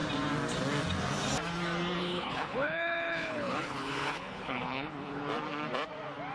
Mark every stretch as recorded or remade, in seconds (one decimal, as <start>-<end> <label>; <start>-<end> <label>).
0.0-2.0 recorded; 2.0-5.2 remade; 5.2-6.3 recorded

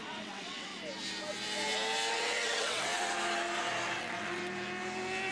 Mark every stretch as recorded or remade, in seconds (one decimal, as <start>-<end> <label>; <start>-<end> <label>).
0.0-0.7 remade; 0.7-2.1 recorded; 2.1-2.9 remade; 2.9-4.0 recorded; 4.0-4.4 remade; 4.4-5.3 recorded